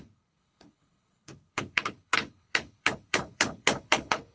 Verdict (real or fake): fake